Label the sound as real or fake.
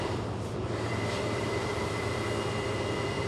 fake